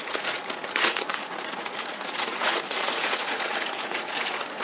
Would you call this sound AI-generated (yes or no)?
yes